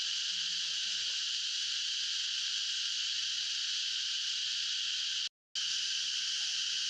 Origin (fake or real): real